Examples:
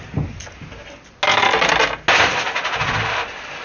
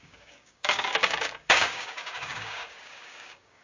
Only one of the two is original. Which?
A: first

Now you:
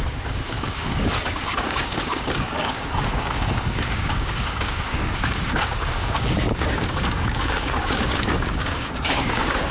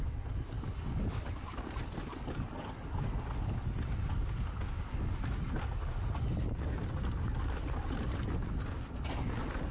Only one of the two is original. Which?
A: second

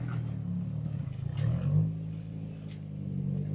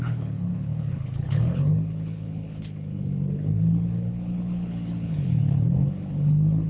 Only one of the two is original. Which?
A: first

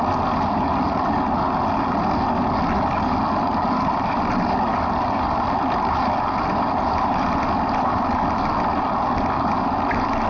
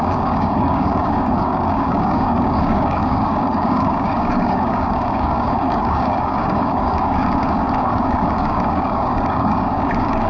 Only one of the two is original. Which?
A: first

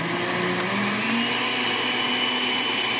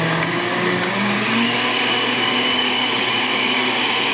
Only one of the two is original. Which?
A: first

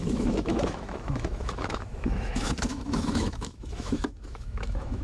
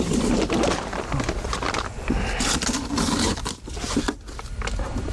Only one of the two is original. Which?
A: second